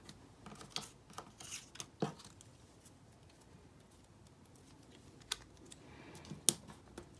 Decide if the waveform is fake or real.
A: real